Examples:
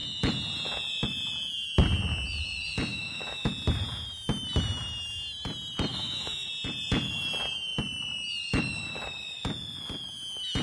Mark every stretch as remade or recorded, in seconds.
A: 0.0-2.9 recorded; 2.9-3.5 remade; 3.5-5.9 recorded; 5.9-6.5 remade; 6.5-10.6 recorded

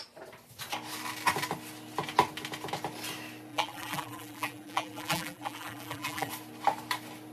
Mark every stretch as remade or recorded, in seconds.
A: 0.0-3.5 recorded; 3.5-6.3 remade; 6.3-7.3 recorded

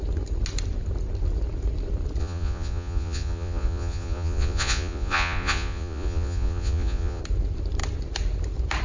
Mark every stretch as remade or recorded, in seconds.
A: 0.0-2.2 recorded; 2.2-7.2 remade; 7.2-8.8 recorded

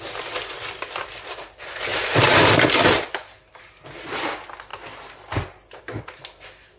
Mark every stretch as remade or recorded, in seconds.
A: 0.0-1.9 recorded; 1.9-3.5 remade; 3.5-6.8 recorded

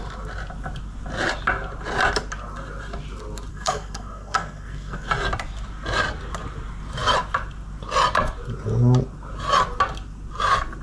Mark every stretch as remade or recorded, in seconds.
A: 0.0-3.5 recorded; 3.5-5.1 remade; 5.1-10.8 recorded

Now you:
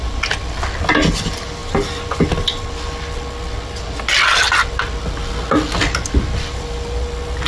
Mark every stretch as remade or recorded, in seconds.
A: 0.0-7.5 recorded

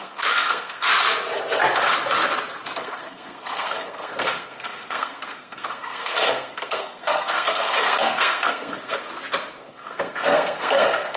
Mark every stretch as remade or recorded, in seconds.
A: 0.0-0.9 remade; 0.9-2.8 recorded; 2.8-9.1 remade; 9.1-9.6 recorded; 9.6-11.2 remade